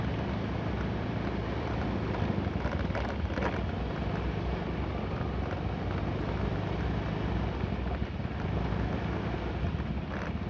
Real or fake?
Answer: real